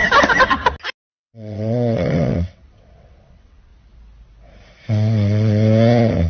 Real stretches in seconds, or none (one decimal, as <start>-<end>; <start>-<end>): 0.0-1.1; 3.7-6.3